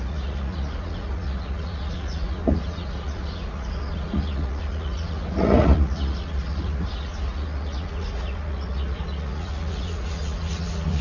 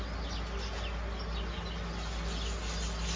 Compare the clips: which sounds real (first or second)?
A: second